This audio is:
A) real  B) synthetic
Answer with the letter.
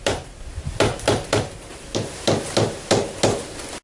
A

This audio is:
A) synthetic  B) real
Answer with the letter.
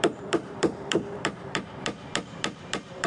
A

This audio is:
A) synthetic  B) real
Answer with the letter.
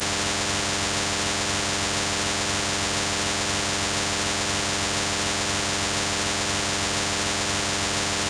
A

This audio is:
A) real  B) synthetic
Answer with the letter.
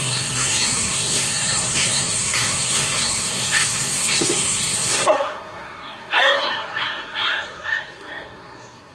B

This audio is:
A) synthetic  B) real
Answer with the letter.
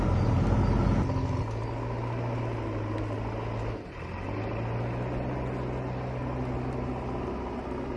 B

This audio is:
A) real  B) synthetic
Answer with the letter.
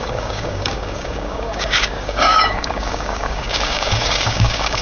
B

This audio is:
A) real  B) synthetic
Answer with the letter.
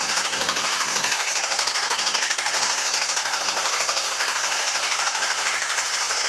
B